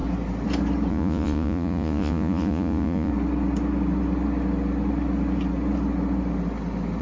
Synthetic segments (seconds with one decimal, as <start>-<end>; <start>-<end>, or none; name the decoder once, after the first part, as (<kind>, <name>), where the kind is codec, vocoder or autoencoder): 0.9-3.1 (vocoder, Vocos)

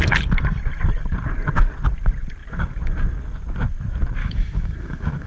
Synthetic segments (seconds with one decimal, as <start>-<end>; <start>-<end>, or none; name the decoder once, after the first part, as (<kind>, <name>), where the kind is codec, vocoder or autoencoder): 4.2-5.3 (autoencoder, DAC-VAE)

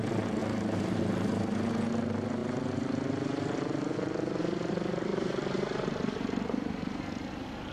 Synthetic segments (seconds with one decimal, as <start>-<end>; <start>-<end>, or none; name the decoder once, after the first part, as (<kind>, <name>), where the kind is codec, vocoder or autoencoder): 0.4-1.0 (vocoder, BigVGAN v2); 5.1-7.0